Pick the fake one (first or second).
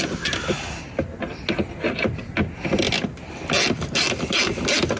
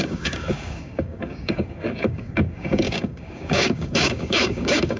second